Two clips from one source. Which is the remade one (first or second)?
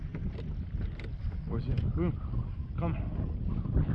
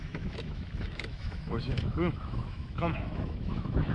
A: second